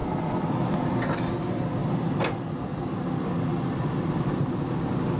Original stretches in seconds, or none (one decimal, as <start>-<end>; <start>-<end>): 1.1-1.8; 2.6-3.5